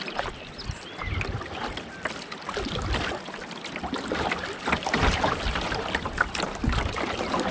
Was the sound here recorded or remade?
recorded